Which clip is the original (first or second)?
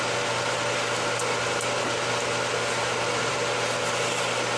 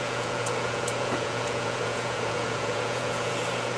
first